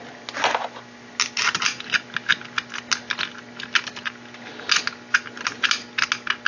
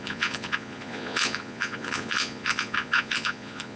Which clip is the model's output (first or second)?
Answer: second